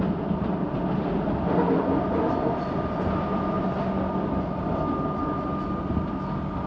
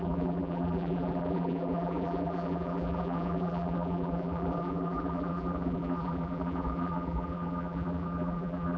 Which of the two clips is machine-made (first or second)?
second